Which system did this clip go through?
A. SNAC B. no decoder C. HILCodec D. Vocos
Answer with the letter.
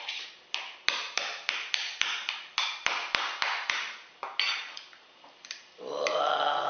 B